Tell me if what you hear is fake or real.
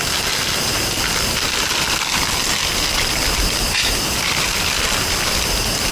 real